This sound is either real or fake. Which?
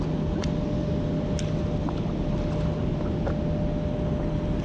real